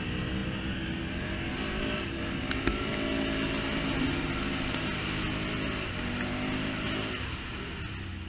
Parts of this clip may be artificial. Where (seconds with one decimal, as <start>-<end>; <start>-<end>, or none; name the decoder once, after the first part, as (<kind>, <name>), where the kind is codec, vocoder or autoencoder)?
none